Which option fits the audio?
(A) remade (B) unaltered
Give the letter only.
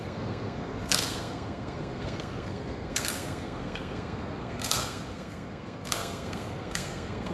A